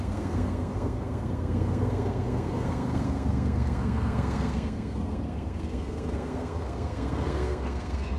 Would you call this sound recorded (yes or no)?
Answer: no